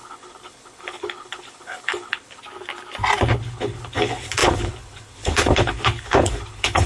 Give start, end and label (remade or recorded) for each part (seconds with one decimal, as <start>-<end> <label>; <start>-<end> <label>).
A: 0.0-2.4 remade; 2.4-3.4 recorded; 3.4-6.9 remade

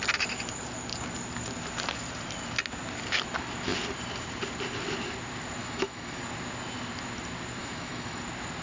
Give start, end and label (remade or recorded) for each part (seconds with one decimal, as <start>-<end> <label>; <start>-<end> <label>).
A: 0.0-5.6 recorded; 5.6-6.2 remade; 6.2-7.6 recorded; 7.6-8.2 remade; 8.2-8.6 recorded

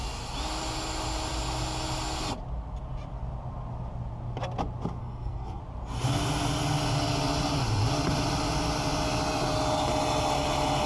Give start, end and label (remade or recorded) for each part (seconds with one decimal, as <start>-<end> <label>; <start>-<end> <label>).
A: 0.0-5.0 recorded; 5.0-5.6 remade; 5.6-10.9 recorded

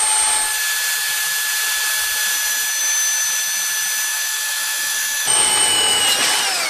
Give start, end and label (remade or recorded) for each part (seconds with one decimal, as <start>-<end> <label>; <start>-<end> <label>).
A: 0.0-4.1 recorded; 4.1-6.0 remade; 6.0-6.7 recorded

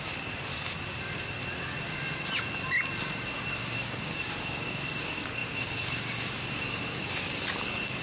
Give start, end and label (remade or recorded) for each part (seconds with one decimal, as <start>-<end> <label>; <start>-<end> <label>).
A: 0.0-0.5 remade; 0.5-3.5 recorded; 3.5-8.0 remade

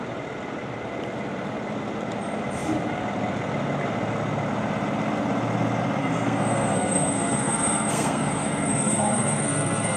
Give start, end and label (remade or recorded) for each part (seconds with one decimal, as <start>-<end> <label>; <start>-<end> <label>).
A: 0.0-6.0 recorded; 6.0-10.0 remade

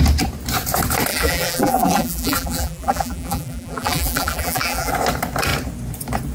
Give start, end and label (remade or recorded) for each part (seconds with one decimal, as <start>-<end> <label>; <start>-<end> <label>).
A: 0.0-1.1 recorded; 1.1-4.9 remade; 4.9-6.3 recorded